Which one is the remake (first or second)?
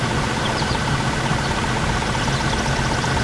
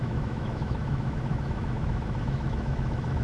second